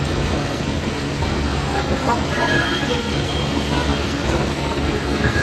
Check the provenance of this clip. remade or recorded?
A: remade